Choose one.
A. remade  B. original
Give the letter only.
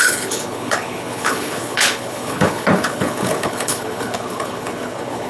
A